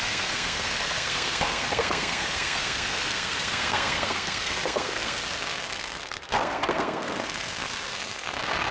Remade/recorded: remade